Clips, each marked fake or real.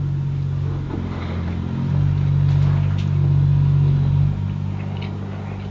real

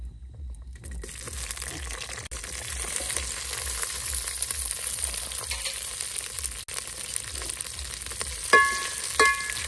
real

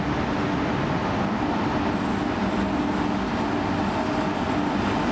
real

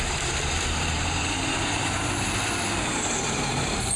fake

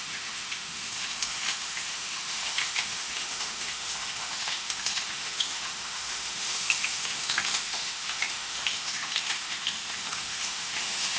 fake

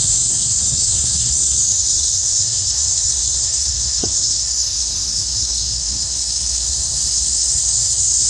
fake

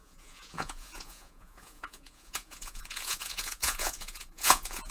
fake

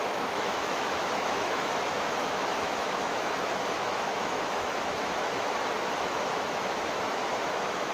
fake